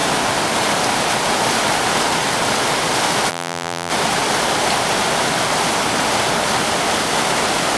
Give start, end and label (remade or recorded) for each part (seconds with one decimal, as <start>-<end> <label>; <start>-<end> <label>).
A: 0.0-3.3 recorded; 3.3-3.9 remade; 3.9-7.8 recorded